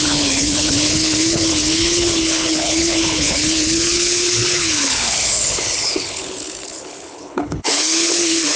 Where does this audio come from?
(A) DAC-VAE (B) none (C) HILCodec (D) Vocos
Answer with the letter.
C